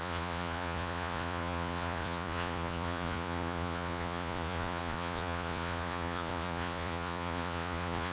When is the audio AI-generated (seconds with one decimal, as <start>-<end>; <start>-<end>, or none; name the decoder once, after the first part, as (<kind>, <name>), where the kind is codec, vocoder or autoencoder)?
0.0-8.1 (vocoder, Vocos)